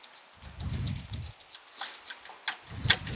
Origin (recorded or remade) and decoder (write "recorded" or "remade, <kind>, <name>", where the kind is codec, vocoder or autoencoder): recorded